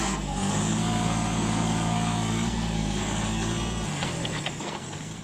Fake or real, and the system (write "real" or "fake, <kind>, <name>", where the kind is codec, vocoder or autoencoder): fake, codec, SNAC